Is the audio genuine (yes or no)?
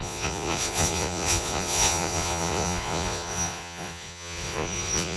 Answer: no